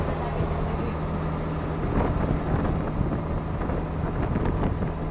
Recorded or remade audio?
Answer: recorded